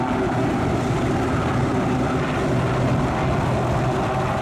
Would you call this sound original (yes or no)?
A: yes